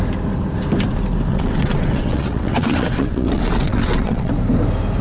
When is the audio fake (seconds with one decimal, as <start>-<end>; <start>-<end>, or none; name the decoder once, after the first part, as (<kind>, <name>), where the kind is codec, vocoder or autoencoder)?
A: 1.3-4.3 (vocoder, WaveNeXt)